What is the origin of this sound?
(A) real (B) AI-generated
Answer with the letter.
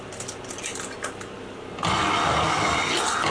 A